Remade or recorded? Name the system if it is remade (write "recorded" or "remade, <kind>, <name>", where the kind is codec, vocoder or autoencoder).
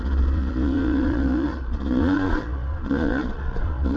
remade, vocoder, Vocos